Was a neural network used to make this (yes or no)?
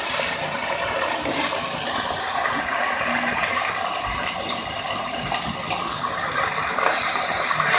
no